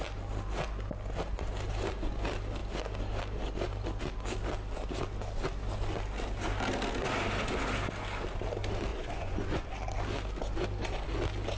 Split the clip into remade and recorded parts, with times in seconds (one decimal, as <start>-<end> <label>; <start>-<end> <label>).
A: 0.0-8.9 recorded; 8.9-9.7 remade; 9.7-11.6 recorded